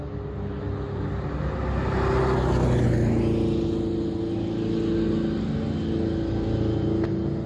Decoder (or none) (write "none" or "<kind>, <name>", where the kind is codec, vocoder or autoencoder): none